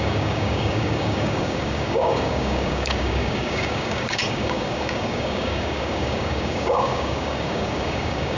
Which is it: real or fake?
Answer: fake